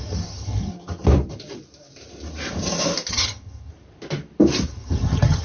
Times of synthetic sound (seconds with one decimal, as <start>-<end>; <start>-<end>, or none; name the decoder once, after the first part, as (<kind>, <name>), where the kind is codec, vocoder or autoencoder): 0.0-0.7 (vocoder, HiFi-GAN); 3.1-3.7; 4.7-5.4